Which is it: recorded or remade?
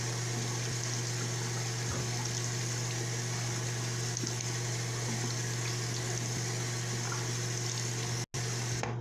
recorded